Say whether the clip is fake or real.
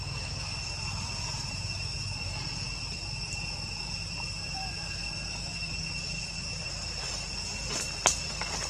real